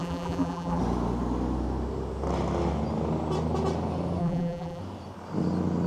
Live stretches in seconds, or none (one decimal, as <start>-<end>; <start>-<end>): 0.8-4.2; 4.8-5.9